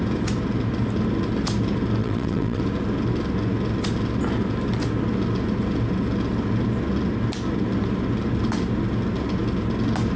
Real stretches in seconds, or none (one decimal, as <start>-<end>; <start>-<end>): 0.0-2.0; 2.6-10.2